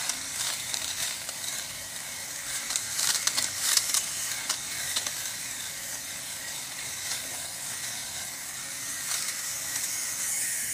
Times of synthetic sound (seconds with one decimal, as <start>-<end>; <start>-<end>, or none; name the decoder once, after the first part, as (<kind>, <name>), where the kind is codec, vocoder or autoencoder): 0.0-10.7 (codec, DAC)